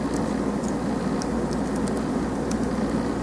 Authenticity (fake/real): real